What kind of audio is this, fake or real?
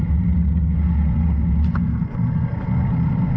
real